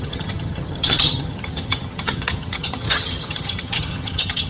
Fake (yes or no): yes